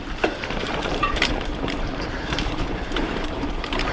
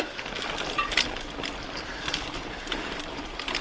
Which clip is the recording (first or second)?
second